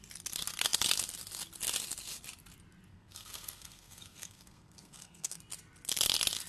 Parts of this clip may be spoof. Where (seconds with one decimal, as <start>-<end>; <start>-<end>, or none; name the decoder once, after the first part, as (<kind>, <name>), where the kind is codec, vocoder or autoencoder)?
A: 2.9-5.4 (codec, SNAC)

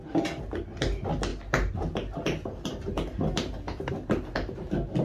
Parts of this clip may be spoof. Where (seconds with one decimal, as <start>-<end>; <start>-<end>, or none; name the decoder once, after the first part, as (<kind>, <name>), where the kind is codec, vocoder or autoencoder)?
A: none

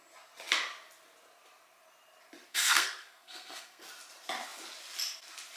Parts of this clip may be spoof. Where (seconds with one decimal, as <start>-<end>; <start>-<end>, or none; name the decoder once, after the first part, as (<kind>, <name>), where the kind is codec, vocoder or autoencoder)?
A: 2.5-3.8 (codec, SNAC)

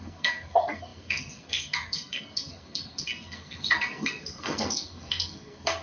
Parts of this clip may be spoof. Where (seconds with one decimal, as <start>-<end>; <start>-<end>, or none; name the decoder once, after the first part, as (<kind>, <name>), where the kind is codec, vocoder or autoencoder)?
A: 0.0-5.8 (codec, SNAC)

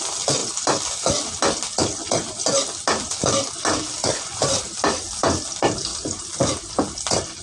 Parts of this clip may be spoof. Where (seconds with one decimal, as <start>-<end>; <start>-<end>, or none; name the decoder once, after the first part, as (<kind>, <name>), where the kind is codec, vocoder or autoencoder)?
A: none

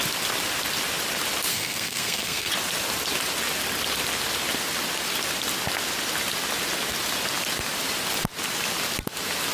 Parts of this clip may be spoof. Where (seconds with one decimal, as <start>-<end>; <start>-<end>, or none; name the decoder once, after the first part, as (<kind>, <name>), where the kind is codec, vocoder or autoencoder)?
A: 1.5-2.5 (codec, SNAC)

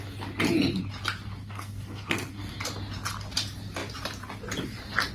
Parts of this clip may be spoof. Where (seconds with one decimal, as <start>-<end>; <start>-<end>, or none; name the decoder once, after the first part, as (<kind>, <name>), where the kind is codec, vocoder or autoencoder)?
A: 1.4-2.6 (codec, SNAC)